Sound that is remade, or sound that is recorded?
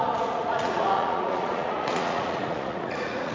remade